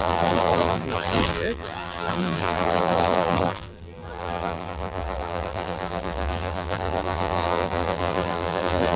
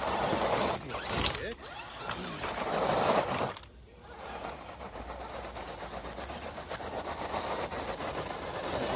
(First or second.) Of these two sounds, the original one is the second